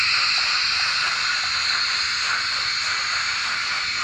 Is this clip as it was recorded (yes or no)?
yes